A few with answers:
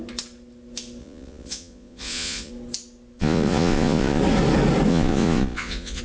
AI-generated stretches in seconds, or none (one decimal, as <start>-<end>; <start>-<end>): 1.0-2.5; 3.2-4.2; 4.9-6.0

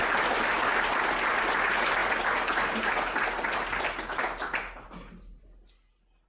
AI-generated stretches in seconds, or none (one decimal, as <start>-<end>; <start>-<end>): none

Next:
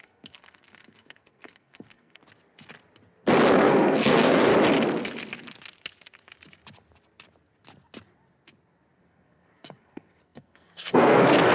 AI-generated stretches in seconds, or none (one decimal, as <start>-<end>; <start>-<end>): 0.0-2.2; 3.5-4.5; 9.0-11.5